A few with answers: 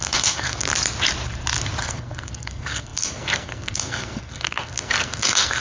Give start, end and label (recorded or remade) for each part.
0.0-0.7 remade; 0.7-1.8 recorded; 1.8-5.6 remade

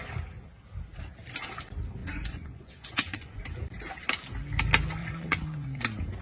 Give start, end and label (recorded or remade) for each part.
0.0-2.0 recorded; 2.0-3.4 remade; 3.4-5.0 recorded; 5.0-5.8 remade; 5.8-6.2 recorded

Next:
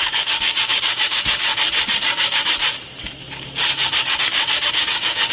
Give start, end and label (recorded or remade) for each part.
0.0-1.5 remade; 1.5-4.7 recorded; 4.7-5.3 remade

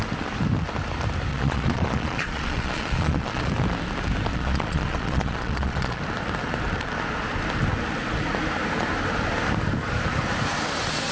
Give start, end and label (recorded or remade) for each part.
0.0-1.3 recorded; 1.3-3.5 remade; 3.5-4.3 recorded; 4.3-6.0 remade; 6.0-11.1 recorded

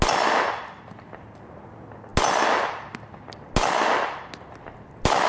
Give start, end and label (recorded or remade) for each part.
0.0-5.3 recorded

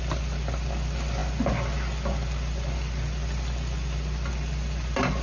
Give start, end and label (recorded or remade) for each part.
0.0-5.2 recorded

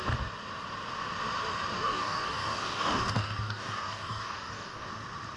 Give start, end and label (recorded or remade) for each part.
0.0-1.7 recorded; 1.7-4.9 remade; 4.9-5.4 recorded

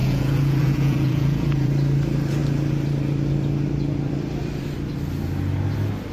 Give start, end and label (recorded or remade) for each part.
0.0-1.7 remade; 1.7-6.1 recorded